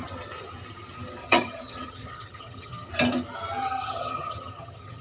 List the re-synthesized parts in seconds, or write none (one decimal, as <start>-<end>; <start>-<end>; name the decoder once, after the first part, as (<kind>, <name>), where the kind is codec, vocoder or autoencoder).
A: 1.2-2.9 (vocoder, HiFi-GAN); 3.6-5.0